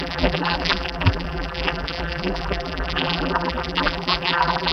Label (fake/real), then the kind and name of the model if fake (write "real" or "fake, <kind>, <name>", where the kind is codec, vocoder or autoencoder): fake, vocoder, BigVGAN v2